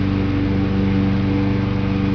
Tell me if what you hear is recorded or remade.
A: recorded